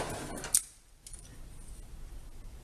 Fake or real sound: real